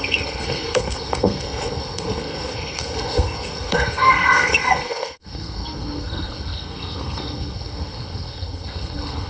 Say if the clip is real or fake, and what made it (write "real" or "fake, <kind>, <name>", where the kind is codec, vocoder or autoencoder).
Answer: fake, codec, SNAC